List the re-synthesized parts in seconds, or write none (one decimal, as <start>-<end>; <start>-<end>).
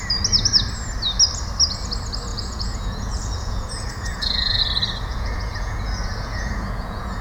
2.3-4.6; 5.1-7.2